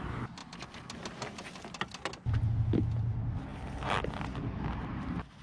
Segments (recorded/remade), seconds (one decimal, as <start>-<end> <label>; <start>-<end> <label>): 0.0-5.4 recorded